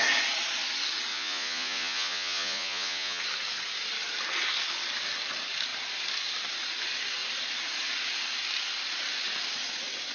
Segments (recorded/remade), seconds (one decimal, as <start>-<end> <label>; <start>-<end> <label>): 0.0-1.1 recorded; 1.1-3.2 remade; 3.2-10.1 recorded